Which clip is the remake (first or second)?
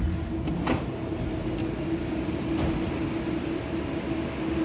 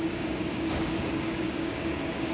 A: second